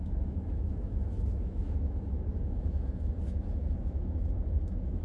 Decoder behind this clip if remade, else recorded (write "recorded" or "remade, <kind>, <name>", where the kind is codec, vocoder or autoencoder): remade, autoencoder, DAC-VAE